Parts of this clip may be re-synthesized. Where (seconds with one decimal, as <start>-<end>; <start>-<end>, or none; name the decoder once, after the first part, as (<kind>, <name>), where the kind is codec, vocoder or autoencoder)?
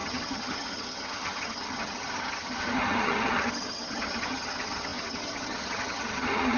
0.0-6.6 (vocoder, HiFi-GAN)